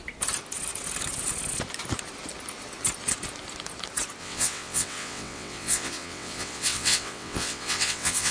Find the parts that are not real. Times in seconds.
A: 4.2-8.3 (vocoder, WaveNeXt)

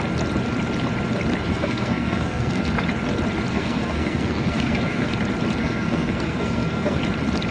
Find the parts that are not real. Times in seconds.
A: 1.5-2.6 (codec, SNAC); 3.5-5.1; 5.6-7.0

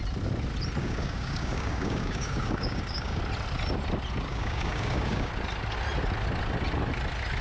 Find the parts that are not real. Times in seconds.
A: 0.8-3.2 (codec, DAC); 4.3-5.3

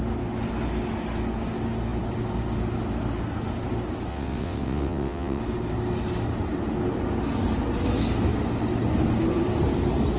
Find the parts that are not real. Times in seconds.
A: 4.1-5.4 (vocoder, WaveNeXt)